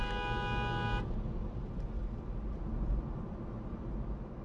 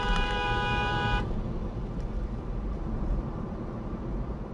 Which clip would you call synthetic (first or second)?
second